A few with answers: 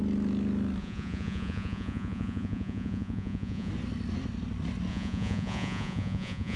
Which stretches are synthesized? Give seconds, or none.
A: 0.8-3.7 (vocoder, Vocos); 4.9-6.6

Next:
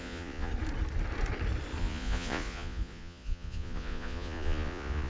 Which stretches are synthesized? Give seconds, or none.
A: 0.0-0.5 (vocoder, Vocos); 1.8-5.1

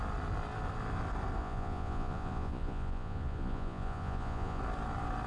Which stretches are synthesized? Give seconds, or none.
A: 1.4-4.6 (vocoder, Vocos)

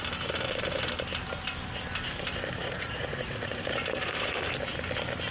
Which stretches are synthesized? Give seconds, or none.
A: 2.6-3.6 (vocoder, Vocos)

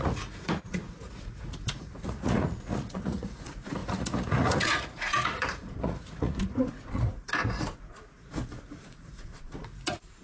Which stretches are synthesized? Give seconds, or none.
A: 0.0-10.2 (vocoder, Vocos)

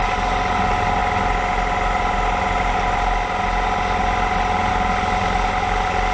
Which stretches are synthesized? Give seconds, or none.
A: none

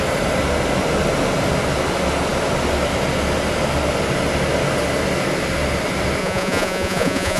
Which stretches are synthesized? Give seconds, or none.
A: 6.2-7.4 (vocoder, Vocos)

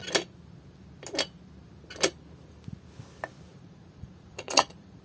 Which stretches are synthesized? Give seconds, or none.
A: 3.5-5.0 (vocoder, Vocos)